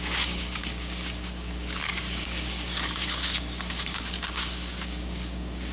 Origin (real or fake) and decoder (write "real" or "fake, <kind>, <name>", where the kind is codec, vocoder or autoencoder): fake, codec, DAC